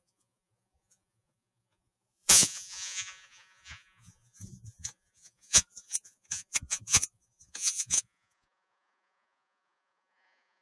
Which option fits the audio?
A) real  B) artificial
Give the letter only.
B